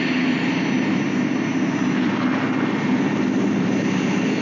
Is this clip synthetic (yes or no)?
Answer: no